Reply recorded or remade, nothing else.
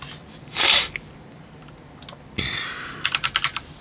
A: recorded